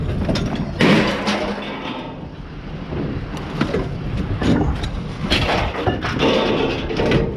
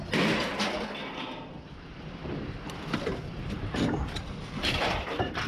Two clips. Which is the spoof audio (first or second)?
second